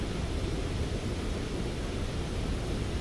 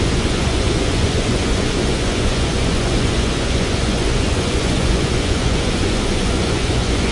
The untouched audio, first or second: first